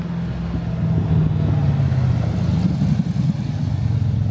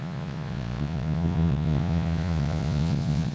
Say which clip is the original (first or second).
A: first